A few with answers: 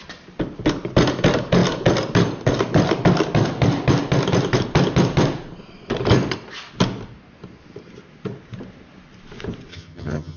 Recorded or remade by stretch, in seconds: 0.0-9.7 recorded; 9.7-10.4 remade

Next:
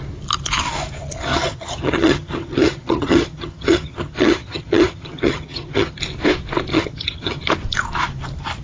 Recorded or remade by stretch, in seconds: 0.0-1.3 recorded; 1.3-6.0 remade; 6.0-6.7 recorded; 6.7-7.4 remade; 7.4-8.6 recorded

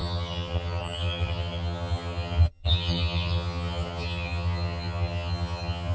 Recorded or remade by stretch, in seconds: 0.0-5.9 remade

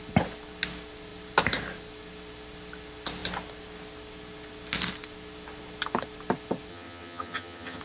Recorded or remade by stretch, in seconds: 0.0-6.7 recorded; 6.7-7.8 remade